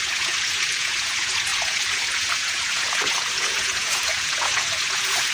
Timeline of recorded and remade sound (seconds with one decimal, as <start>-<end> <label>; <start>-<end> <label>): 0.0-5.3 remade